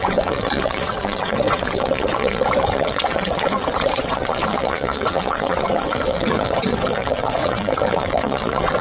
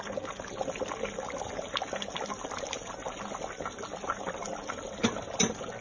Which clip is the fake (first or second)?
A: first